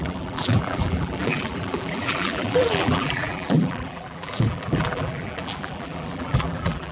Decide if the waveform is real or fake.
fake